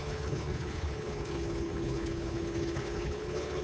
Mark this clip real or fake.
fake